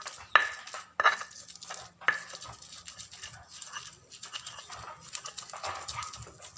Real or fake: real